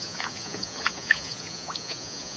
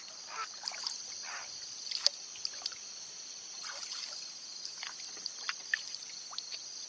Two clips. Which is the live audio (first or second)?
second